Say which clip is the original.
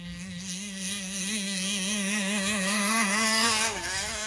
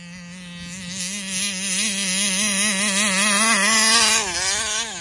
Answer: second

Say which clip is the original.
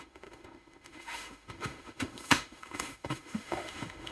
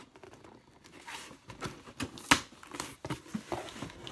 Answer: second